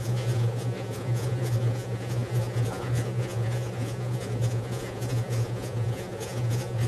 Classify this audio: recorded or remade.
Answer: remade